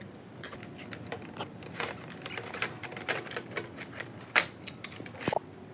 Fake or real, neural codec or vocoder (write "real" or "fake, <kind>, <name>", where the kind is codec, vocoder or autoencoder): real